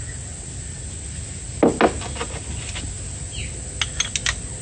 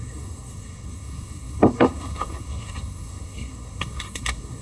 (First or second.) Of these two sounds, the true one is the first